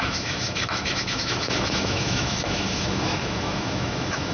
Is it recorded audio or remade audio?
remade